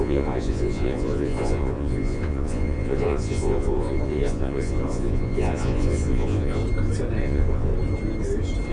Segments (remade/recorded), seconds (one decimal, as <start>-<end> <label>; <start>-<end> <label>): 0.0-6.6 remade; 6.6-7.2 recorded; 7.2-7.7 remade; 7.7-8.7 recorded